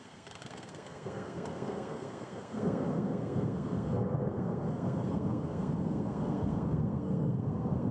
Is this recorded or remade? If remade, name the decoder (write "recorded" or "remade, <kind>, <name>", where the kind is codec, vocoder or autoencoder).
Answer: remade, codec, SNAC